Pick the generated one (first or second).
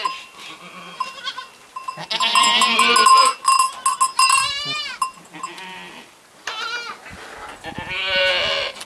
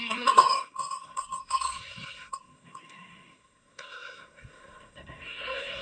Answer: second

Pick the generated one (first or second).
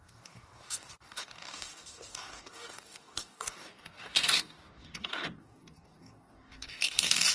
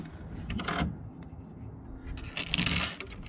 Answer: first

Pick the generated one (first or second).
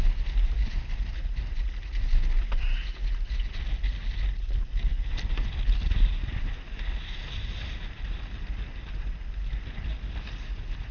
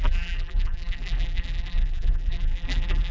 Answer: second